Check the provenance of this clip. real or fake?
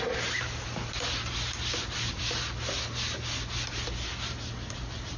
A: real